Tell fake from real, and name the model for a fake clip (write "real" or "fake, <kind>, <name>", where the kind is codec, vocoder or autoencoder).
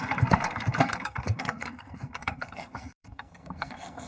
fake, codec, SNAC